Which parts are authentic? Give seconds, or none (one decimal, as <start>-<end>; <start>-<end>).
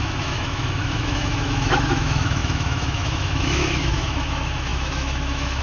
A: none